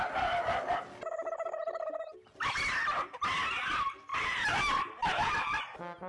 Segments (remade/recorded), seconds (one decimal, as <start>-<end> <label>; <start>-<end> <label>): 0.0-4.1 recorded; 4.1-5.6 remade; 5.6-6.1 recorded